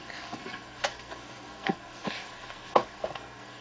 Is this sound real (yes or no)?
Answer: no